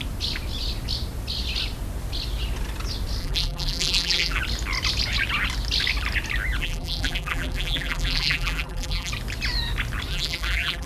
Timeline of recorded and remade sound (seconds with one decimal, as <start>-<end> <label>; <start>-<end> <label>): 0.0-3.2 recorded; 3.2-4.4 remade; 4.4-6.6 recorded; 6.6-9.1 remade; 9.1-10.1 recorded; 10.1-10.9 remade